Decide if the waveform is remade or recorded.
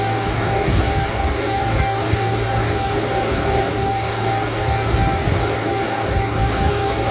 remade